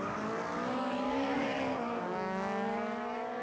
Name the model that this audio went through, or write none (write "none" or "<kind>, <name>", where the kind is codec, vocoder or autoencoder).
codec, DAC